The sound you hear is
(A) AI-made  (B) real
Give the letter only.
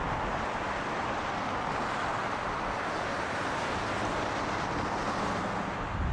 B